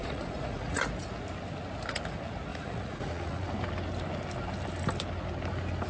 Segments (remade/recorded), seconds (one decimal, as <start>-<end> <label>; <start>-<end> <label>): 0.0-0.8 remade; 0.8-2.5 recorded; 2.5-3.5 remade; 3.5-5.9 recorded